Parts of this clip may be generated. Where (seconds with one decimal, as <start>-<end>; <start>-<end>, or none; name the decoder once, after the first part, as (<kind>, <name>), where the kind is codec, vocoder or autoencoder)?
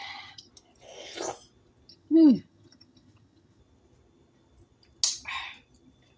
0.0-0.5 (vocoder, HiFi-GAN); 1.9-3.6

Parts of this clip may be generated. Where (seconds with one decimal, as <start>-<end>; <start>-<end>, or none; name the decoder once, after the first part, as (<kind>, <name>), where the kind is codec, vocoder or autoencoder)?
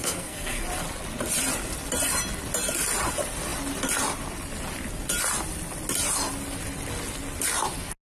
0.0-0.6 (codec, SNAC)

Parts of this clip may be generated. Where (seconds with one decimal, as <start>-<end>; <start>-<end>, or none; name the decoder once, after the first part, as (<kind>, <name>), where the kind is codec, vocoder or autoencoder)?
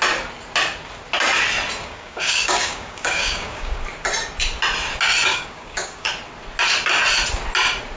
1.8-3.8 (codec, DAC); 5.3-6.1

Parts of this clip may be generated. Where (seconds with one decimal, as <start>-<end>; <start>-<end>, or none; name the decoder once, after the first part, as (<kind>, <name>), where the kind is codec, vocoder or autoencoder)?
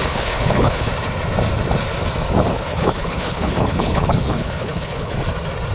0.0-0.9 (codec, HILCodec); 2.5-5.1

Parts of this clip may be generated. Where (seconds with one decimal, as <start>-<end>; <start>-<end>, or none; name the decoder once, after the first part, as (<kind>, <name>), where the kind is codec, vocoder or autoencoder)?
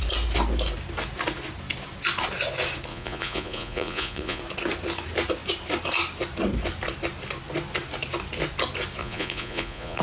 2.9-4.4 (vocoder, Vocos); 9.0-10.0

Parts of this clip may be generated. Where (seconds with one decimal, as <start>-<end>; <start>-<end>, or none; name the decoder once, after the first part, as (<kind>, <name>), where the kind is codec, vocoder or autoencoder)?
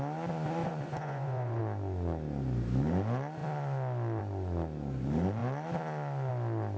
0.6-1.6 (vocoder, Vocos)